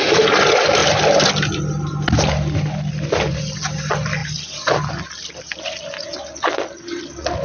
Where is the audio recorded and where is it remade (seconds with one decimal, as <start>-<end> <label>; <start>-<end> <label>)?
0.0-4.2 recorded; 4.2-4.9 remade; 4.9-7.4 recorded